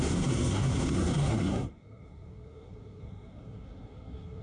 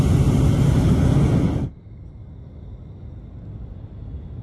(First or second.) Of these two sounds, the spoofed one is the first